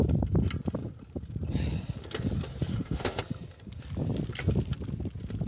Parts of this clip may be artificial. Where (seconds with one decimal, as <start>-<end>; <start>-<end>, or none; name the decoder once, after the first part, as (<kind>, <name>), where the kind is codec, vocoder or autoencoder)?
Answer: 2.7-3.2 (autoencoder, DAC-VAE)